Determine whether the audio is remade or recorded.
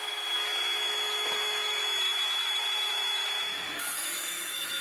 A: remade